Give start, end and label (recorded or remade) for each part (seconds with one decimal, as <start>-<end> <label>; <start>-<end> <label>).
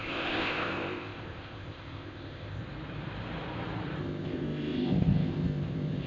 0.0-2.6 remade; 2.6-4.0 recorded; 4.0-6.1 remade